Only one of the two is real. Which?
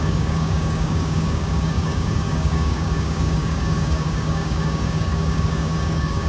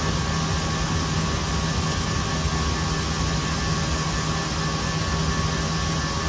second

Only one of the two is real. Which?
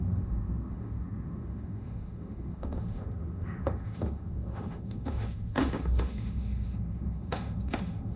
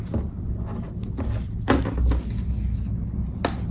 second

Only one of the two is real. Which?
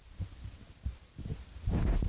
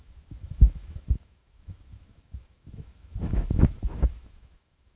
first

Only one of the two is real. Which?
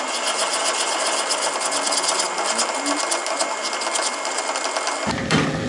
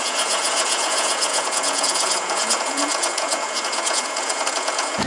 first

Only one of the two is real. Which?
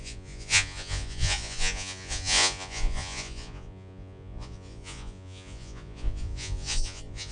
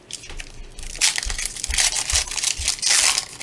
second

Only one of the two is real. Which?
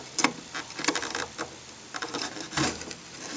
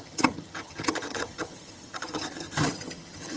first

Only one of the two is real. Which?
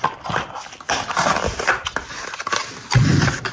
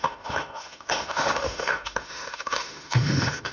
first